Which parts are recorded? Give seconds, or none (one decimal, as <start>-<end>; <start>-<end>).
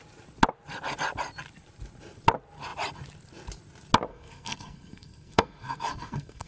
0.0-4.1